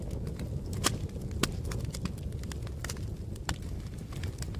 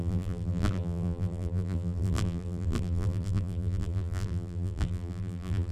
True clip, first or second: first